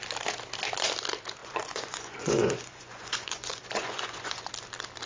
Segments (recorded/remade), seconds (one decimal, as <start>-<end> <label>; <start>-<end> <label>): 0.0-1.4 recorded; 1.4-4.5 remade; 4.5-5.1 recorded